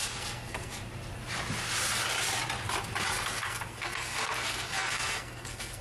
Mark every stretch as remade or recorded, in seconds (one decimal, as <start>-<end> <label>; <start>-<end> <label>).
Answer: 0.0-0.8 remade; 0.8-3.1 recorded; 3.1-5.8 remade

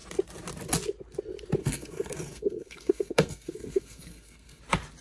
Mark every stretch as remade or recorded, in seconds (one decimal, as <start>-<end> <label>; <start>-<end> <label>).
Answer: 0.0-1.6 recorded; 1.6-4.6 remade; 4.6-5.0 recorded

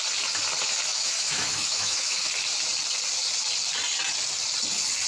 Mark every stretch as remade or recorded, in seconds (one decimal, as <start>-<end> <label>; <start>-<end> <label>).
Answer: 0.0-0.9 recorded; 0.9-2.3 remade; 2.3-5.1 recorded

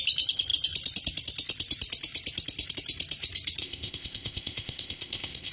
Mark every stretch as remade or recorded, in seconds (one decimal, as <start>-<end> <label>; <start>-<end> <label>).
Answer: 0.0-3.6 recorded; 3.6-5.5 remade

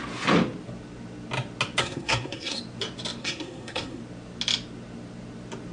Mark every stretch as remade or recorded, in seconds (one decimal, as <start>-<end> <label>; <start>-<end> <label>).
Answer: 0.0-1.8 recorded; 1.8-2.6 remade; 2.6-3.2 recorded; 3.2-4.0 remade; 4.0-5.7 recorded

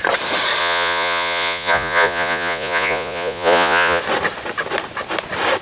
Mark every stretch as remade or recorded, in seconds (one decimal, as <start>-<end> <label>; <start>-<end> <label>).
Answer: 0.0-0.6 recorded; 0.6-4.0 remade; 4.0-5.6 recorded

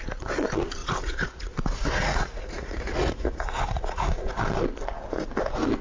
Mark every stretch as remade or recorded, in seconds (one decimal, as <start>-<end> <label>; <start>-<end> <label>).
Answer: 0.0-0.8 recorded; 0.8-4.3 remade; 4.3-5.8 recorded